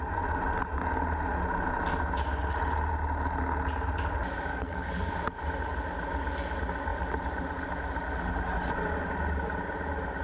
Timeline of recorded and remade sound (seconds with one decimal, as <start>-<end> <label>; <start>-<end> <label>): 0.0-4.5 recorded; 4.5-5.1 remade; 5.1-10.2 recorded